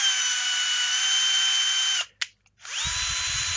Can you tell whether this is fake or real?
real